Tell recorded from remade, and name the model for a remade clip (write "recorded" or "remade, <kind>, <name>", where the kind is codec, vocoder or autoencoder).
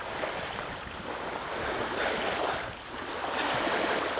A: recorded